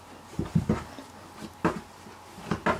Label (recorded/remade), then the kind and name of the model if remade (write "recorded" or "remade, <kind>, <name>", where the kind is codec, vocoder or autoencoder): recorded